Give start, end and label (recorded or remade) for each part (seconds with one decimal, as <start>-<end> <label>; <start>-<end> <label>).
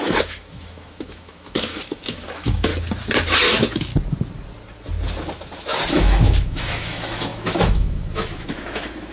0.0-2.7 remade; 2.7-3.4 recorded; 3.4-3.9 remade; 3.9-5.9 recorded; 5.9-9.1 remade